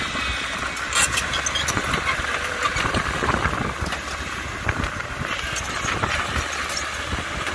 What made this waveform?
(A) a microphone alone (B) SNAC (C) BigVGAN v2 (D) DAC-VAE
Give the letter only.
A